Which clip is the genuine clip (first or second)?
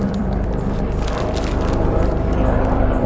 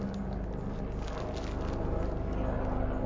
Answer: second